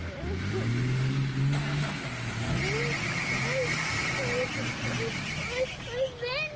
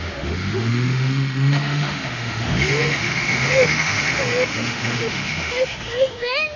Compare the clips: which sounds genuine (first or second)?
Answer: first